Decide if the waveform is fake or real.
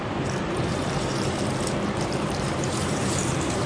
fake